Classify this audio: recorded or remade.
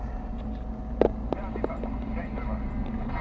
recorded